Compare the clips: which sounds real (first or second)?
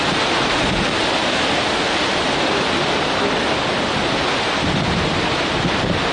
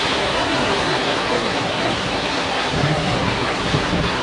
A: first